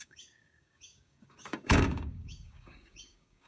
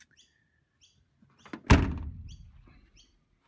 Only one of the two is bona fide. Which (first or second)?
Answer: second